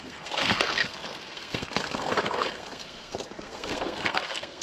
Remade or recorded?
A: remade